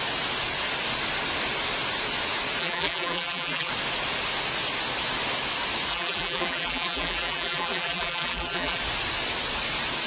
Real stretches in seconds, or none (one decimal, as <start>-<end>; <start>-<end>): 0.0-2.6; 3.7-5.9; 8.8-10.1